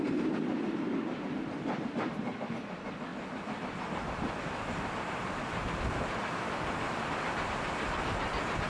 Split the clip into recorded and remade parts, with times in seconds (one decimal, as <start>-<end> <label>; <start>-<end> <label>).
0.0-3.1 recorded; 3.1-5.3 remade; 5.3-8.7 recorded